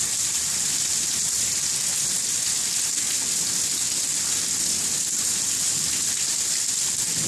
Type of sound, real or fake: real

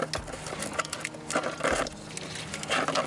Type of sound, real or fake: real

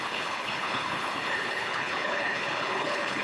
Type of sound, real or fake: fake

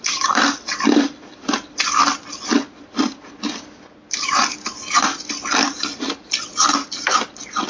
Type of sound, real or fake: real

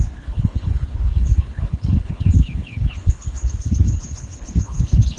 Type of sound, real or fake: fake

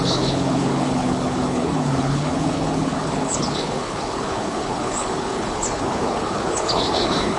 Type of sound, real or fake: fake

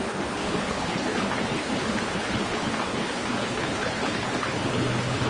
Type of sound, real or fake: fake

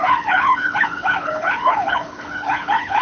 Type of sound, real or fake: fake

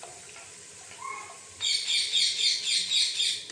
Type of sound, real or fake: real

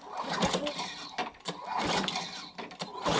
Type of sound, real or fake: real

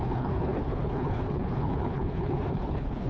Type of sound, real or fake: fake